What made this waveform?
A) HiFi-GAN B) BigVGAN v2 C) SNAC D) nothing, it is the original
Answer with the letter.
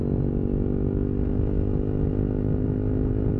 D